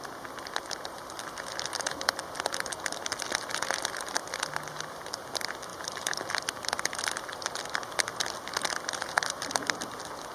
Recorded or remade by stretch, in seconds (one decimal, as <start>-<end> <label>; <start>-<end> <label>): 0.0-10.3 recorded